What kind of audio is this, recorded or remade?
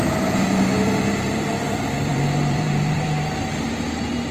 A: remade